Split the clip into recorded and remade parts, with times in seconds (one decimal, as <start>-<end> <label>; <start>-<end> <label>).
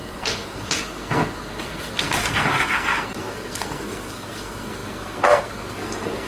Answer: 0.0-6.3 remade